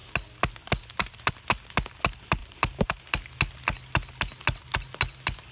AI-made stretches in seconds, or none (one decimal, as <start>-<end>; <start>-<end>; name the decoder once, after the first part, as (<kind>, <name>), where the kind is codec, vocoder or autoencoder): 2.4-3.0 (vocoder, BigVGAN v2)